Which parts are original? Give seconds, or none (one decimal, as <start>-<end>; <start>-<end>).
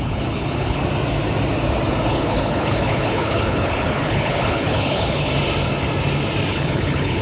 0.8-2.1; 5.3-6.5